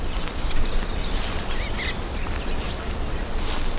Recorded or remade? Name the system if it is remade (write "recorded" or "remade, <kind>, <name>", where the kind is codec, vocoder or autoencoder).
recorded